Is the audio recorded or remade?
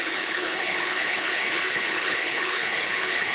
remade